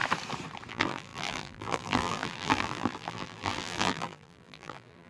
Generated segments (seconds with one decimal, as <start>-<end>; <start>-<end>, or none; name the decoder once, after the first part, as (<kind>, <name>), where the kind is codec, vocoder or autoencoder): 0.7-5.1 (vocoder, BigVGAN v2)